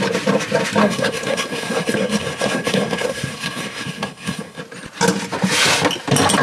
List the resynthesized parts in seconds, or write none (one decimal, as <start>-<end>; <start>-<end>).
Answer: 0.8-4.6